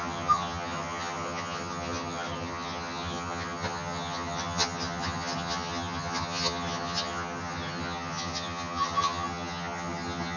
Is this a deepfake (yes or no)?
yes